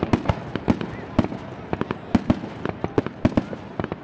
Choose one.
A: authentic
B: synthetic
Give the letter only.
A